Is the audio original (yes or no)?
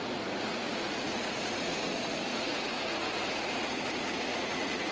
no